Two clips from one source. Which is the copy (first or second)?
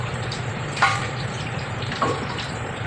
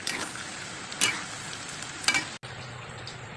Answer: first